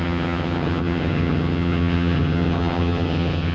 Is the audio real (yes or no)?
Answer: no